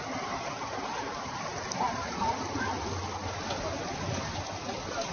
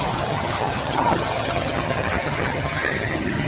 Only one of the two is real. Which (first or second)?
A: first